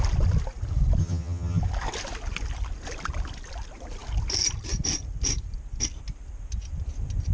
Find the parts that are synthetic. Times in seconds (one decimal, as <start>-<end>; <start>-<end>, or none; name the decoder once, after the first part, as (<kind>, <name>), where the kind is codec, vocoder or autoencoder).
1.0-1.6 (vocoder, HiFi-GAN)